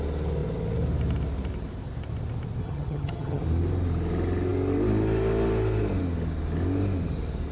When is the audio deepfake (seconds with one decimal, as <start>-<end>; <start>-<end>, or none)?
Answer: 2.6-3.4